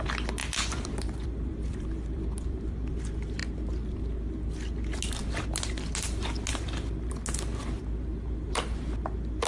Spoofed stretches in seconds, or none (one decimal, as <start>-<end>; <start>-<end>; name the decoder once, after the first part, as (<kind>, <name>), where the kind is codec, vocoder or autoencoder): 0.4-3.0 (vocoder, BigVGAN v2)